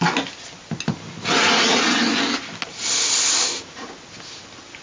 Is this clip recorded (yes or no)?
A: yes